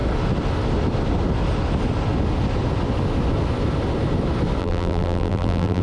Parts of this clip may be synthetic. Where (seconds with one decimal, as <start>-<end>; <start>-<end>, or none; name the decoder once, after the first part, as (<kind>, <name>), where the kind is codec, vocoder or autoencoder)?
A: 4.6-5.8 (vocoder, BigVGAN v2)